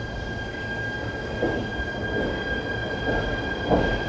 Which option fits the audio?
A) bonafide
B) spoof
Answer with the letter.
A